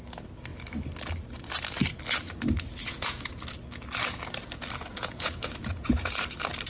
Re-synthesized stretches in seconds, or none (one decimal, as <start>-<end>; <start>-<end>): 2.8-3.4; 4.9-6.1

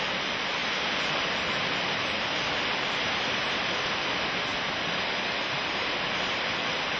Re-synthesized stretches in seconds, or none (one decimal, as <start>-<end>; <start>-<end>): none

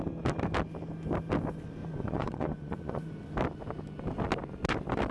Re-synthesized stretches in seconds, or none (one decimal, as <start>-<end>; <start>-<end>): 1.8-3.1

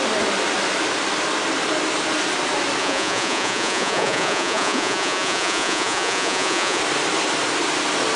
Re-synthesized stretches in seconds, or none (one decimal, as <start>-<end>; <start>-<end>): 2.8-6.8

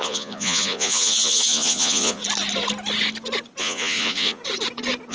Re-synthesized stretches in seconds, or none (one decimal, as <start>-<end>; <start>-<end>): 0.0-2.2; 3.6-4.4